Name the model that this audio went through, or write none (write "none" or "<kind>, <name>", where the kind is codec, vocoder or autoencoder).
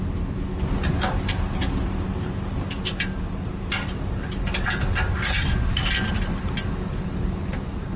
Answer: none